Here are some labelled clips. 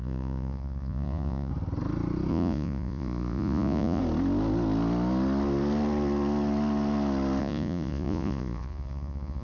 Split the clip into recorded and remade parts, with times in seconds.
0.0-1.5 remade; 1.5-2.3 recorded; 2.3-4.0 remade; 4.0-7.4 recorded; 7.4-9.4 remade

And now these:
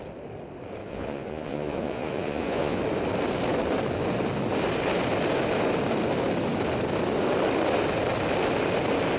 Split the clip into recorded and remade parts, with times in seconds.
0.0-0.8 recorded; 0.8-2.8 remade; 2.8-9.2 recorded

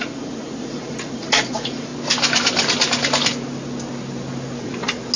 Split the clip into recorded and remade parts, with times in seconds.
0.0-1.9 remade; 1.9-5.2 recorded

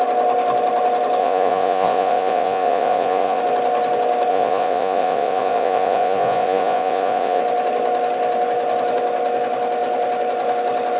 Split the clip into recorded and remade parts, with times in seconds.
0.0-1.2 recorded; 1.2-3.4 remade; 3.4-4.3 recorded; 4.3-7.4 remade; 7.4-11.0 recorded

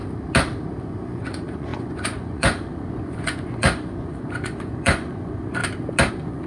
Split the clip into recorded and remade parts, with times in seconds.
0.0-0.8 recorded; 0.8-5.6 remade; 5.6-6.1 recorded; 6.1-6.5 remade